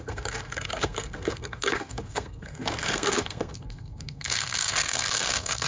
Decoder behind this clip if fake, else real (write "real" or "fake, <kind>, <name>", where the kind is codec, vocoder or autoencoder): fake, codec, SNAC